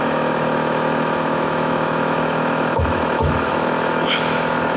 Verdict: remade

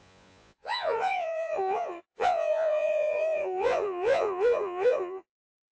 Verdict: remade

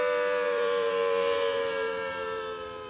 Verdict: remade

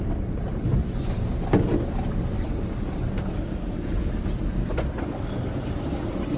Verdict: recorded